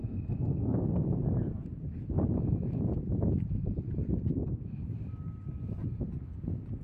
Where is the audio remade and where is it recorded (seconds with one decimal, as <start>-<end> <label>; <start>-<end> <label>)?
0.0-1.0 remade; 1.0-6.8 recorded